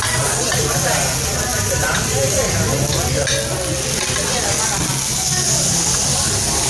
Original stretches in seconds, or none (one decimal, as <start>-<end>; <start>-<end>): 0.0-1.5; 2.5-6.7